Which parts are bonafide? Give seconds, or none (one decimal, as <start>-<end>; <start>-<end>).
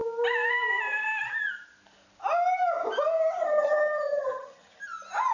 0.0-3.4; 4.8-5.3